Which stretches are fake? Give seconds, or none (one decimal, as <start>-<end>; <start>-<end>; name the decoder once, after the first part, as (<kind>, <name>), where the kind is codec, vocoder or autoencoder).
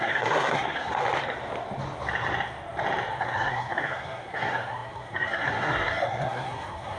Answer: 0.0-1.0 (codec, SNAC); 3.2-7.0